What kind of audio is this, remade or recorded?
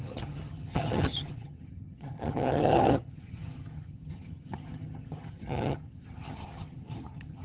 remade